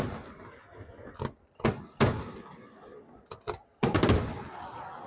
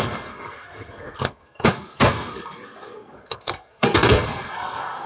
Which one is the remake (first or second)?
second